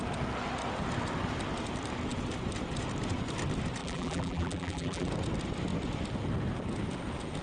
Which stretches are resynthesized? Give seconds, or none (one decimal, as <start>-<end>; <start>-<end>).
3.8-5.1